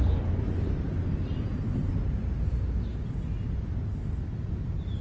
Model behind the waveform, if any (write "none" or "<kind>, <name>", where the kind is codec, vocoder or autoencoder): none